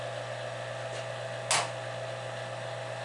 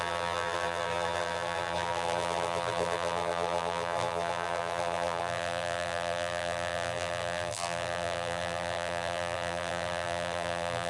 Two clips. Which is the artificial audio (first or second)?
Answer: second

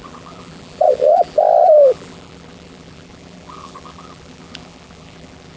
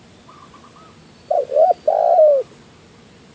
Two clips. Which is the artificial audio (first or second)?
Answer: first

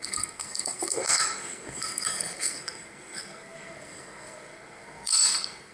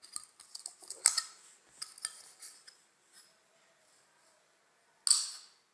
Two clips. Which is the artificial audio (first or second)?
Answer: first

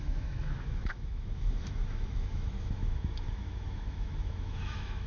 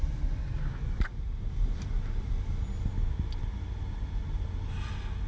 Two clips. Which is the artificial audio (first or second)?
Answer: first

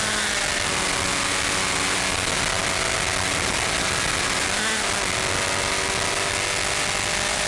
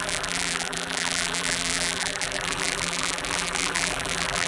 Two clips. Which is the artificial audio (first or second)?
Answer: second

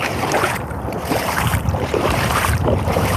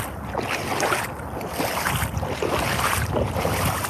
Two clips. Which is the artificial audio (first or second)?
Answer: first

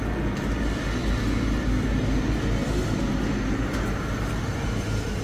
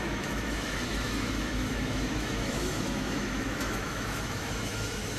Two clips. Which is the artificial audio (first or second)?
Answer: second